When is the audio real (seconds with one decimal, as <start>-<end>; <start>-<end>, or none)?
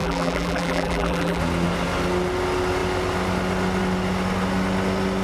1.4-5.2